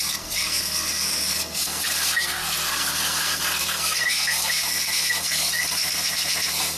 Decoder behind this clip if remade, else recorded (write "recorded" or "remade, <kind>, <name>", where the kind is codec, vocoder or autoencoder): remade, codec, SNAC